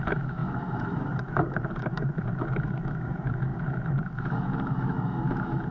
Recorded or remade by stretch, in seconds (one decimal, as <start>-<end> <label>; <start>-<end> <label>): 0.0-5.7 remade